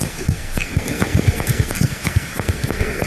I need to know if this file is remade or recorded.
remade